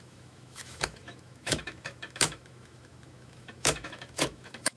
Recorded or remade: remade